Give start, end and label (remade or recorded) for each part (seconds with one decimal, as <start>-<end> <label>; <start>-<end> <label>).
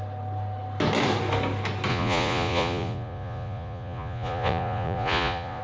0.0-1.9 recorded; 1.9-5.6 remade